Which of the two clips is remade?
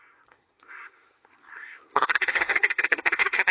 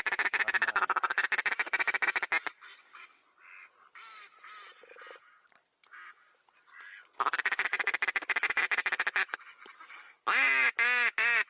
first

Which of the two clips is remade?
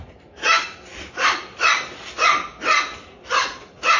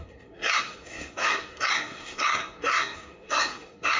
second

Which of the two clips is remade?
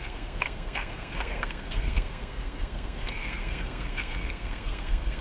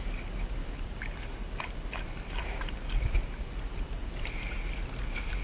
first